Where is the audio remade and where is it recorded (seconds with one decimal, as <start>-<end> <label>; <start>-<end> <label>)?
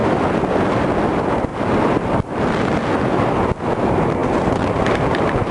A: 0.0-4.2 recorded; 4.2-5.5 remade